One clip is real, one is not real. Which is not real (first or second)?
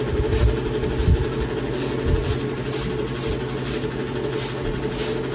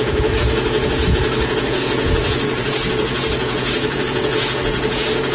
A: second